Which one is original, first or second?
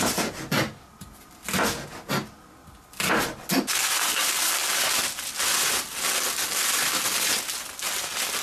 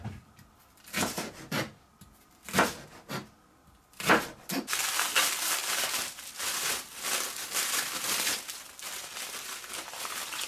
first